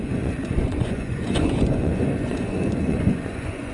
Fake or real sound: fake